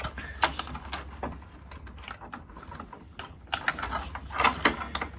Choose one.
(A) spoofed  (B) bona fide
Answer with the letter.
B